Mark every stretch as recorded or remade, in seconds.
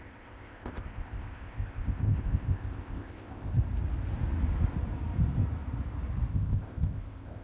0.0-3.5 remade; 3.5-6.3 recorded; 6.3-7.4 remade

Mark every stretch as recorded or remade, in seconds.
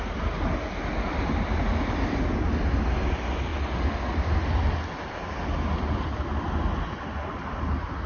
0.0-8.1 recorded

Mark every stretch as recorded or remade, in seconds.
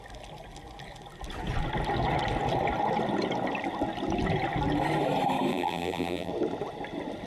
0.0-5.5 recorded; 5.5-6.3 remade; 6.3-7.3 recorded